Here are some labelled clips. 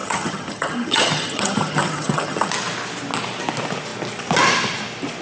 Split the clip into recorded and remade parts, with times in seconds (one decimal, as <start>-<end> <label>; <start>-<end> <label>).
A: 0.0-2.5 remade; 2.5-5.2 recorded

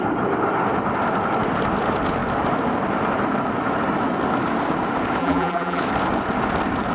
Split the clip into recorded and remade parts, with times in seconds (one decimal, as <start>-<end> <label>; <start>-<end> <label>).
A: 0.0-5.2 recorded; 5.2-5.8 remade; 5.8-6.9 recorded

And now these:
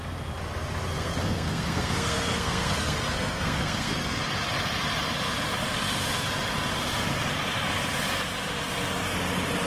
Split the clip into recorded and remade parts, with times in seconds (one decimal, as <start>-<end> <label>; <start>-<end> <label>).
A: 0.0-0.9 recorded; 0.9-3.9 remade; 3.9-9.7 recorded

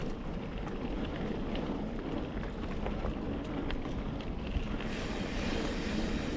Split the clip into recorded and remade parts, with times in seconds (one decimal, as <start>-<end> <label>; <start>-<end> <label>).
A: 0.0-2.1 remade; 2.1-6.4 recorded